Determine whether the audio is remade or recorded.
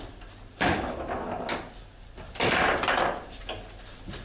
recorded